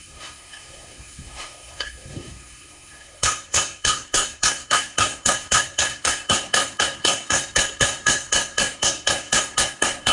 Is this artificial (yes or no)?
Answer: yes